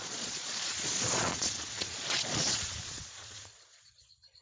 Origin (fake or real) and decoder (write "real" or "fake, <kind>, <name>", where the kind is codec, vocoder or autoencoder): fake, vocoder, Vocos